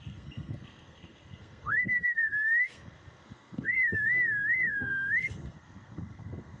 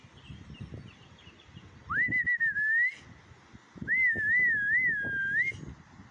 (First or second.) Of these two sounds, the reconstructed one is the first